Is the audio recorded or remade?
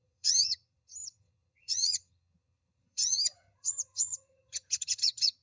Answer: remade